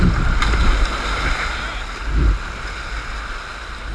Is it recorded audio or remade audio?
recorded